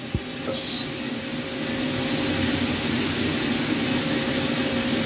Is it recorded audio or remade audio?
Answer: recorded